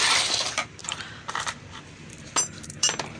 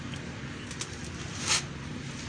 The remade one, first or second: first